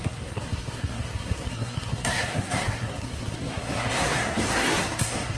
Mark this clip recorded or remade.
remade